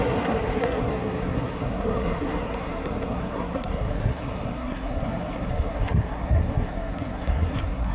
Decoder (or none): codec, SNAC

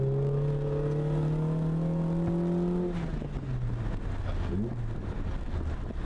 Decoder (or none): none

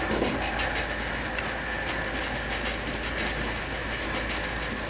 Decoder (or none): none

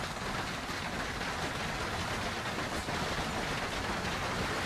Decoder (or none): none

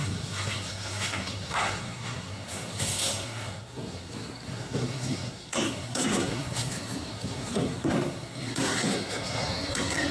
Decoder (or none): codec, SNAC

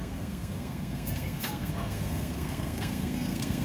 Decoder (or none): codec, SNAC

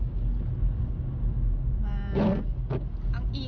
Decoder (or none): none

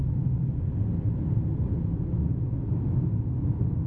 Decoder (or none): none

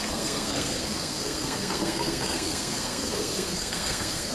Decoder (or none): codec, SNAC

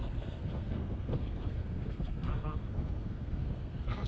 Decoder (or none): codec, SNAC